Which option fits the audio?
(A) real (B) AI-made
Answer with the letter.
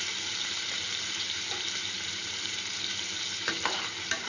B